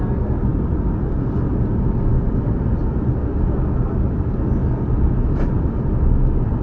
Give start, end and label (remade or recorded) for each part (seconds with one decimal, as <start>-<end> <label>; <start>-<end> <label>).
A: 0.0-6.6 recorded